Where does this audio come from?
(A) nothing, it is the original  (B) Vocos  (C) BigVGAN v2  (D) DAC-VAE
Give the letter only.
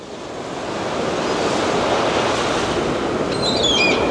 A